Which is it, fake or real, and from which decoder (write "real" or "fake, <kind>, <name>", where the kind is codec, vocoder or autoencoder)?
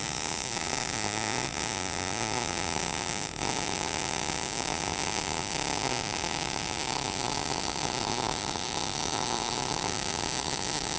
fake, autoencoder, DAC-VAE